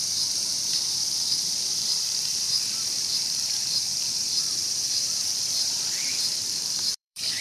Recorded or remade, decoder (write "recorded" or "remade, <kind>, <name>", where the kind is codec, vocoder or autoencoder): remade, vocoder, BigVGAN v2